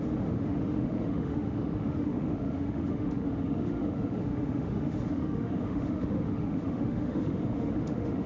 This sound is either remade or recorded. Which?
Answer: remade